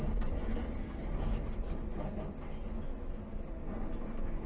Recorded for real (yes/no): yes